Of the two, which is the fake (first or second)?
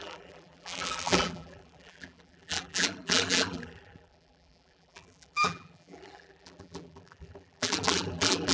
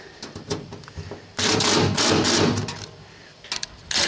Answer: first